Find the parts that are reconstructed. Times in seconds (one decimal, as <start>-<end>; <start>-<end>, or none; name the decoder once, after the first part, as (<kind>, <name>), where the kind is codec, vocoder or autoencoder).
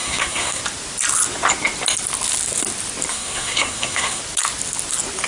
0.0-0.6 (codec, SNAC); 3.1-4.2